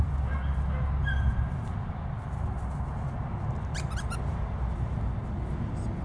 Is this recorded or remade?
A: recorded